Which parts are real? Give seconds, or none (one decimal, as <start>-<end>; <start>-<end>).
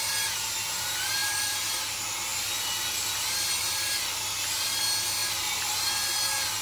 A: 0.0-1.2; 1.7-2.3; 4.7-5.2; 5.9-6.6